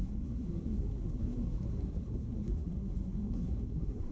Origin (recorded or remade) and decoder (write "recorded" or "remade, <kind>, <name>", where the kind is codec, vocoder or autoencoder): remade, codec, SNAC